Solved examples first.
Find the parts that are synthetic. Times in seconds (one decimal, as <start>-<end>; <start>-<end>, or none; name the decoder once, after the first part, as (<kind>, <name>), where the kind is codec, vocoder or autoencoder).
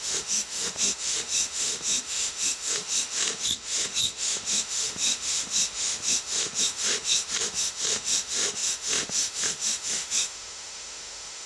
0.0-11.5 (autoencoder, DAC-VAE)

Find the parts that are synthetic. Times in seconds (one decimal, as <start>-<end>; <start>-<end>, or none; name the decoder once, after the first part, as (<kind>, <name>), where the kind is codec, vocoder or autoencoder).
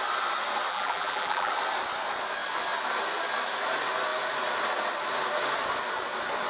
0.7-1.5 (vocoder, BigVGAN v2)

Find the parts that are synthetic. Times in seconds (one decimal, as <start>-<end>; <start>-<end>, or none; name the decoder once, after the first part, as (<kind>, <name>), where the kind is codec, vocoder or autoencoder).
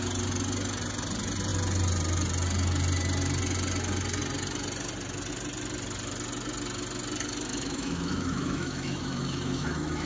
7.5-10.1 (autoencoder, DAC-VAE)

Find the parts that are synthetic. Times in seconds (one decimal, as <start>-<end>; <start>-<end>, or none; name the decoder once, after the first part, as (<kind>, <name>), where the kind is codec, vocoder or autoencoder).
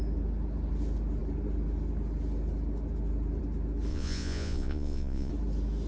3.9-5.3 (vocoder, Vocos)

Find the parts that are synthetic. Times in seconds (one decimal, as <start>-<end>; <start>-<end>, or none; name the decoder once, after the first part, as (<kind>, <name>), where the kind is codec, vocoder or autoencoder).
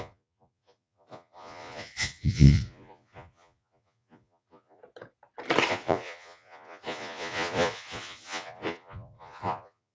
0.0-4.8 (vocoder, Vocos); 5.7-9.9